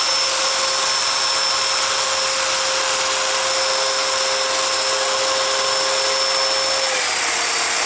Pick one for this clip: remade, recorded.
recorded